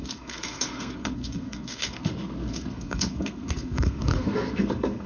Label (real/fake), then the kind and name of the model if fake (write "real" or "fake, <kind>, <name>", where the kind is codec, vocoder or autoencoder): fake, codec, SNAC